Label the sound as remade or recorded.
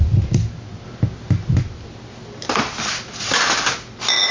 recorded